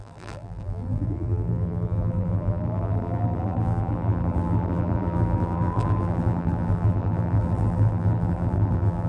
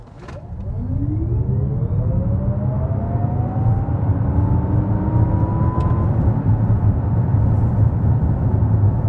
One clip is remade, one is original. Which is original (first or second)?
second